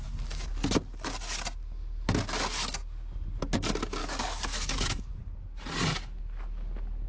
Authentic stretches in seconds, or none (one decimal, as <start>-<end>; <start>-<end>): 0.0-4.0; 5.1-7.1